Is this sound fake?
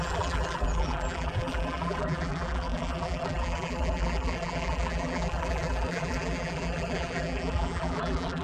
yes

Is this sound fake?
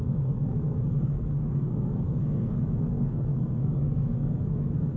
yes